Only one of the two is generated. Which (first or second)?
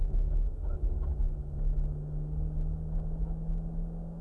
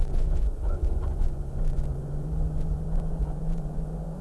second